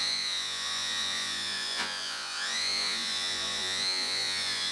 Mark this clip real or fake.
fake